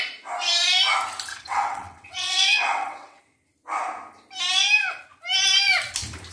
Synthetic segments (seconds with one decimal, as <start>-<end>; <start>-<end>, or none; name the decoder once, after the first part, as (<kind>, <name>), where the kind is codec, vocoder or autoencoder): 1.3-3.2 (vocoder, WaveNeXt)